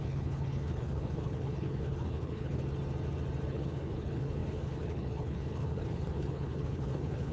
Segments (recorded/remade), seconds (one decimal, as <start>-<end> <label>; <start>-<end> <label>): 0.0-2.6 remade; 2.6-3.5 recorded; 3.5-7.3 remade